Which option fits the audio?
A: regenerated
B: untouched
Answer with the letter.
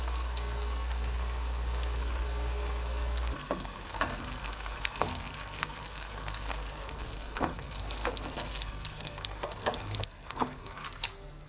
A